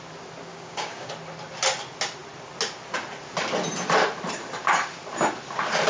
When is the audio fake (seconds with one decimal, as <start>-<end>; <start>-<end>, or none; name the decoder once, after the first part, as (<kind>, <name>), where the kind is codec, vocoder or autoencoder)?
0.5-1.1 (codec, DAC)